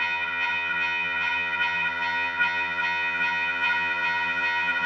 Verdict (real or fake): fake